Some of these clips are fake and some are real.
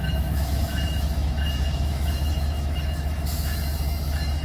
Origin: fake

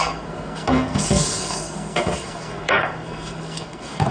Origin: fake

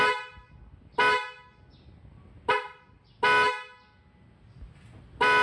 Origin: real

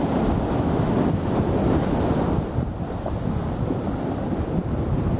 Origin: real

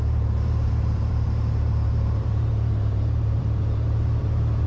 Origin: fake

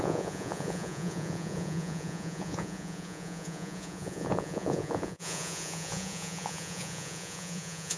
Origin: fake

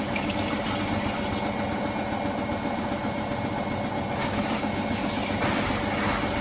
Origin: real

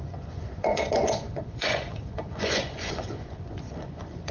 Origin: fake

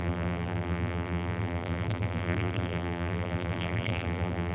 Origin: fake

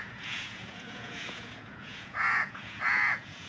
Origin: fake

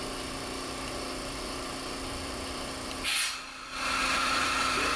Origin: fake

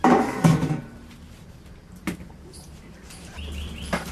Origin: fake